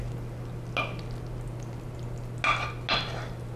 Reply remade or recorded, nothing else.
recorded